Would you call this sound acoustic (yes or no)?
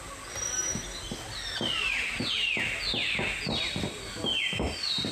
yes